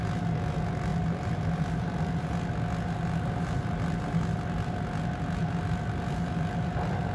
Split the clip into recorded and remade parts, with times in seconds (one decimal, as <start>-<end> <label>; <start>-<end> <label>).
0.0-0.9 recorded; 0.9-2.2 remade; 2.2-7.1 recorded